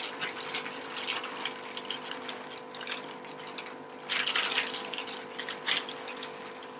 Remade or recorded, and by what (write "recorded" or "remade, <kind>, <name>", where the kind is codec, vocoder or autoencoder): recorded